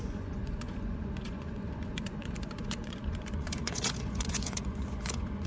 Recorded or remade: remade